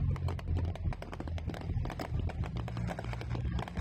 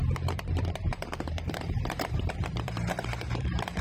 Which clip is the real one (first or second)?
first